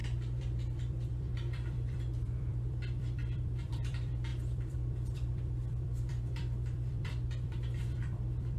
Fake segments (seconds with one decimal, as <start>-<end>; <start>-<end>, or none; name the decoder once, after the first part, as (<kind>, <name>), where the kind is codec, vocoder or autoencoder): 0.0-8.6 (vocoder, BigVGAN v2)